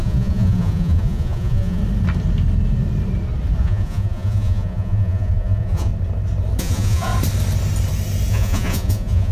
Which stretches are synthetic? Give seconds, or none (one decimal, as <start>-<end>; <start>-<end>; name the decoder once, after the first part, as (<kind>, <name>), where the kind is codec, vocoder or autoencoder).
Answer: 0.0-1.8 (vocoder, Vocos); 3.6-5.9; 6.6-7.1; 8.3-9.3